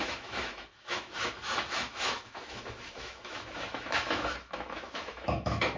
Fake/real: fake